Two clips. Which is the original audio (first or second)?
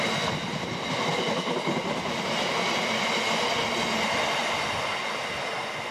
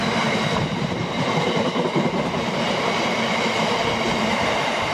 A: first